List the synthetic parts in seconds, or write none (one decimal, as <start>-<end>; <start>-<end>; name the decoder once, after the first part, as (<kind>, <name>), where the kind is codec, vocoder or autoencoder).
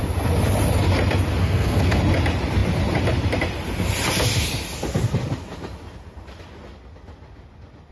1.4-2.0 (codec, SNAC)